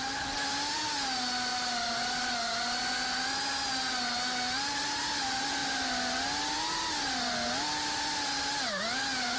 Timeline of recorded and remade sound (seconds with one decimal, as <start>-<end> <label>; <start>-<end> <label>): 0.0-9.4 recorded